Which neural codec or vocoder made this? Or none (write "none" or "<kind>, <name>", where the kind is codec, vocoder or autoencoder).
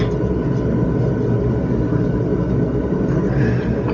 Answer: none